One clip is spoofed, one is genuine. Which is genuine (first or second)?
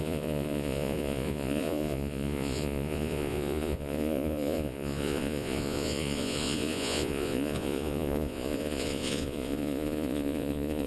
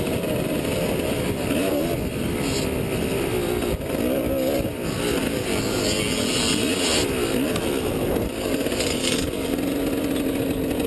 second